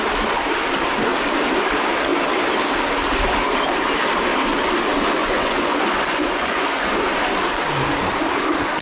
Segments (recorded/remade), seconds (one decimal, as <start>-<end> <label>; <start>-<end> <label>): 0.0-5.2 recorded; 5.2-7.1 remade; 7.1-8.8 recorded